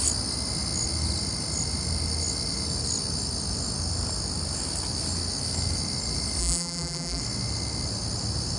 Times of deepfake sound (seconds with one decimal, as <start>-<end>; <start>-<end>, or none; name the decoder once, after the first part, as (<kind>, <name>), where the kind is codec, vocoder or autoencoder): 6.4-7.2 (vocoder, BigVGAN v2)